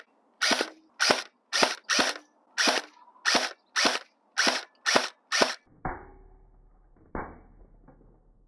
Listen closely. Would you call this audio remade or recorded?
recorded